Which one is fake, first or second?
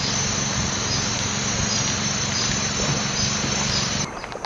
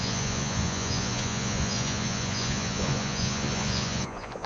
second